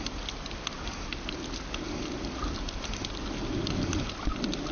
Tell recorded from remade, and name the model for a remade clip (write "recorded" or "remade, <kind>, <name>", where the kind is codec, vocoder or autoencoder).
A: recorded